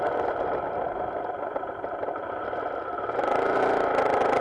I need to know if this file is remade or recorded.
recorded